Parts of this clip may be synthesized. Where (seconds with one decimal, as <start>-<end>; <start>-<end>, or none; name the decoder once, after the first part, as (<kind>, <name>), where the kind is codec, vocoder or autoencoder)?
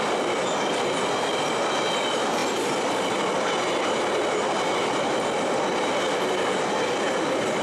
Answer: none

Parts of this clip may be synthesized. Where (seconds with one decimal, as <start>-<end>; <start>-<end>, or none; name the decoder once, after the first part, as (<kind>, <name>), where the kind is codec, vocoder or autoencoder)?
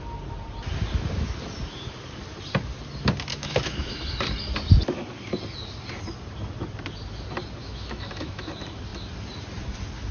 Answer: 3.3-4.0 (autoencoder, DAC-VAE); 7.6-8.5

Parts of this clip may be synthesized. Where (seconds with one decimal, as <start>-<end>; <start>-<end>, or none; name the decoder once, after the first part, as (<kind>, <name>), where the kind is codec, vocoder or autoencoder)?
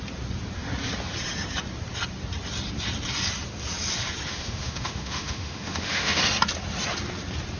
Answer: 4.3-6.2 (autoencoder, DAC-VAE)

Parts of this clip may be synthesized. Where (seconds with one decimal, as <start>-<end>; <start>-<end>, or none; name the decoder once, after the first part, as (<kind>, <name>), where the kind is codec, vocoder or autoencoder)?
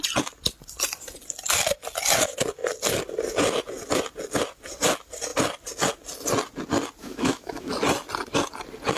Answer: 7.0-7.7 (autoencoder, DAC-VAE)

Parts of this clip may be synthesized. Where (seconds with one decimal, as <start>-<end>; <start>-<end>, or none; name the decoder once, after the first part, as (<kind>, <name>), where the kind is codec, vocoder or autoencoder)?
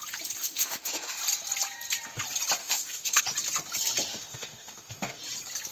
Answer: 0.4-1.2 (autoencoder, DAC-VAE); 2.6-3.2; 4.1-5.2